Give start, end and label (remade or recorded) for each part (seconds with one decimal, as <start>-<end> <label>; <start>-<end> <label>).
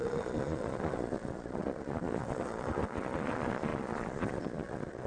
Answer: 0.0-5.1 remade